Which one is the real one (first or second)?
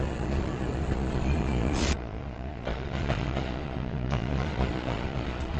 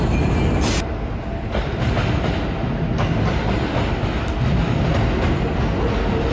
second